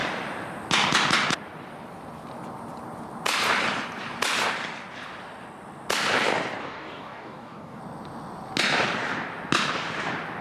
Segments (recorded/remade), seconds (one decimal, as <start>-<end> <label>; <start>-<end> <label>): 0.0-6.6 recorded; 6.6-7.8 remade; 7.8-10.4 recorded